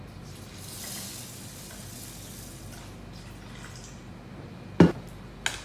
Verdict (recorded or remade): recorded